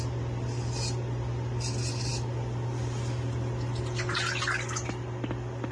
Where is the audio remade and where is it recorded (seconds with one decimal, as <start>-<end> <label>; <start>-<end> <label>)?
0.0-5.7 recorded

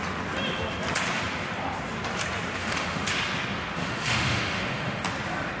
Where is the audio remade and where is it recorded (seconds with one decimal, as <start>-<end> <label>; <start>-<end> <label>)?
0.0-2.6 recorded; 2.6-3.1 remade; 3.1-3.8 recorded; 3.8-5.0 remade; 5.0-5.6 recorded

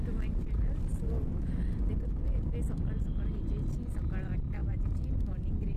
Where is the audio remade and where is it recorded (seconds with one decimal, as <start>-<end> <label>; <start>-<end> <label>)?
0.0-5.8 recorded

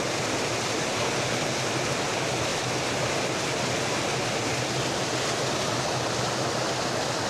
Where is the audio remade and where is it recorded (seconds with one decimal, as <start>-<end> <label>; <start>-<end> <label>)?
0.0-7.3 recorded

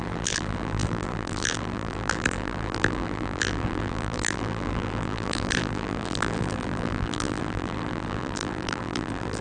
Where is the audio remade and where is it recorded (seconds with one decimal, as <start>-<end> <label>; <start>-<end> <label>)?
0.0-9.4 remade

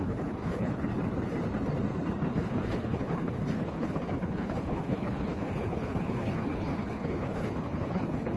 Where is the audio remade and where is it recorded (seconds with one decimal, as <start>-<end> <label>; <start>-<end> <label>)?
0.0-0.9 remade; 0.9-2.3 recorded; 2.3-8.4 remade